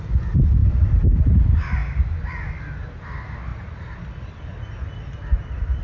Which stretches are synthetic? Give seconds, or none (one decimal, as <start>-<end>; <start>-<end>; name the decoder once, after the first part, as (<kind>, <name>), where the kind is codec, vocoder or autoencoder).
none